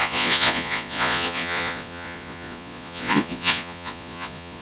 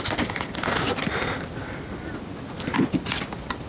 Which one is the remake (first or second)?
first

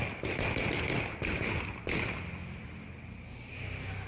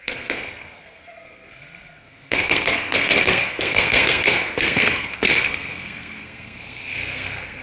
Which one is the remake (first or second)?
second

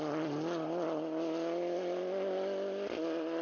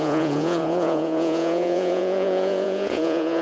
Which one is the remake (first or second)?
second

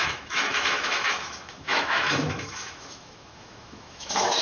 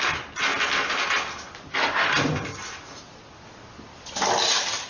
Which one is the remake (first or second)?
first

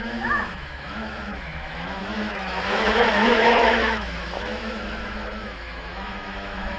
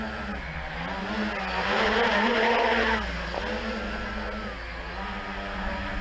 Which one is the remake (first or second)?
first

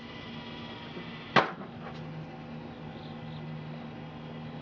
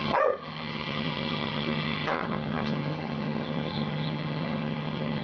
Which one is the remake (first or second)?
second